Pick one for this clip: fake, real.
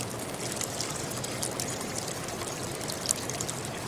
real